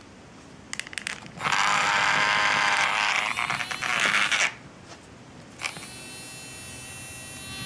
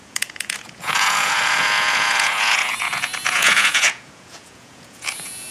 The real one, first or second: first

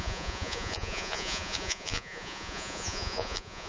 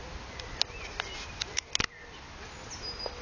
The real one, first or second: second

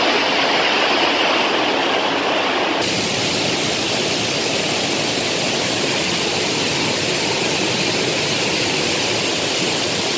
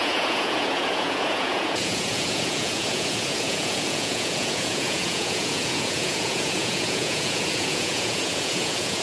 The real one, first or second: first